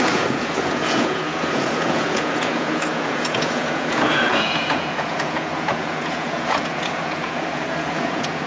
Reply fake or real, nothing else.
fake